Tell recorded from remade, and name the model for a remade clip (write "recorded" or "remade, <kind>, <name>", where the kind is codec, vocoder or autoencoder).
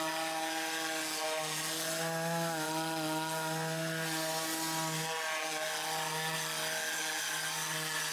recorded